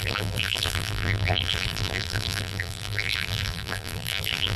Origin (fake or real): fake